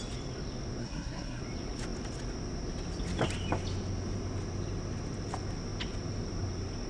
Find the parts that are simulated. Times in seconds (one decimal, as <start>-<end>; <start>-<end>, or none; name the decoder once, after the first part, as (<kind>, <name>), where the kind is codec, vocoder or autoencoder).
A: 0.8-1.4 (codec, SNAC)